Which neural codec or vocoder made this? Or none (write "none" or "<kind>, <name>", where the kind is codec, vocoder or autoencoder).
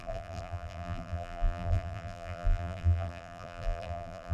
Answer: vocoder, BigVGAN v2